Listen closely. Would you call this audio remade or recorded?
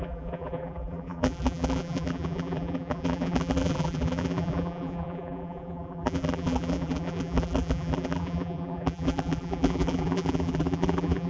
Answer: remade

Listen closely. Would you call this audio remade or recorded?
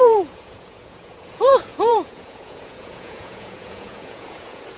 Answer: remade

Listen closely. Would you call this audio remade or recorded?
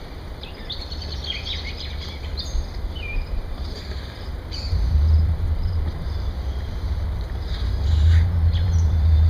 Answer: remade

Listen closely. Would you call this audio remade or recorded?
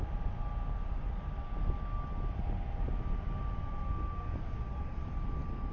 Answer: recorded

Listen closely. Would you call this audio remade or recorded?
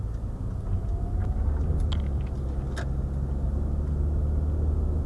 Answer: recorded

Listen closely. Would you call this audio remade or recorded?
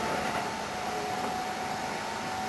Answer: recorded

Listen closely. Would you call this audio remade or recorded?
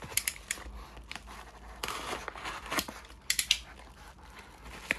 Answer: recorded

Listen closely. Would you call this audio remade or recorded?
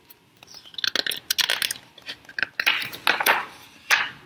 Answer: recorded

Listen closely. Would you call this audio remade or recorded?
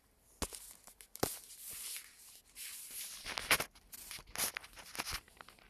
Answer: recorded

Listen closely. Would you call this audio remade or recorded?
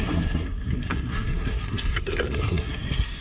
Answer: remade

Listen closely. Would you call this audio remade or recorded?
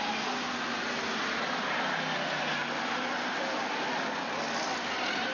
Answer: recorded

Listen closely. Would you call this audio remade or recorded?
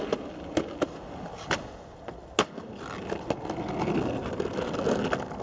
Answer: recorded